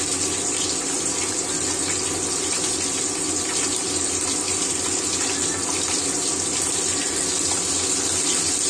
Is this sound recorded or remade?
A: recorded